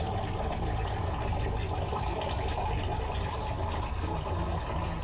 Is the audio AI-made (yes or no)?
no